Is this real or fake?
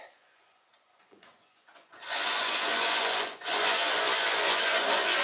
fake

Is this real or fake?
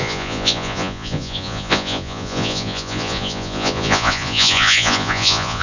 fake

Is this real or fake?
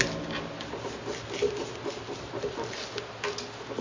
real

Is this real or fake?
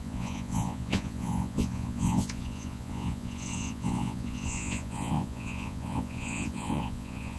fake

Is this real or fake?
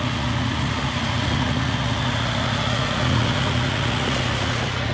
fake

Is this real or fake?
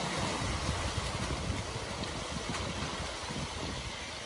real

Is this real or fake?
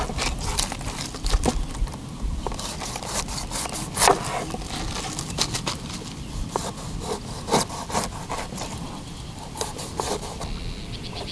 real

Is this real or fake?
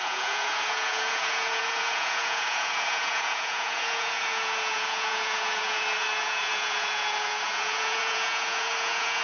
fake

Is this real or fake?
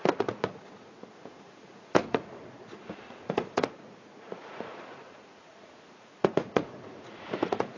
fake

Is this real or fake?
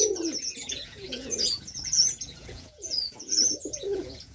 fake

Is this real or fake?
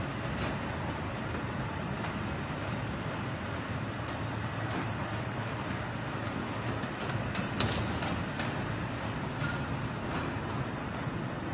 real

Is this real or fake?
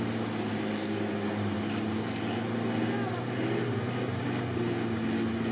real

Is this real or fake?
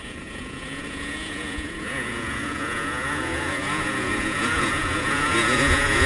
fake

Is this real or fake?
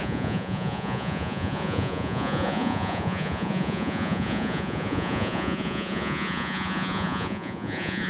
fake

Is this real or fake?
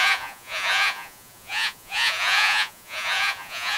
fake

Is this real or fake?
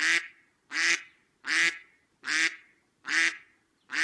real